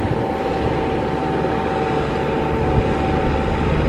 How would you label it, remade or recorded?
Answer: recorded